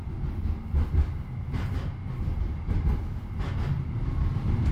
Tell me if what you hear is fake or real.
real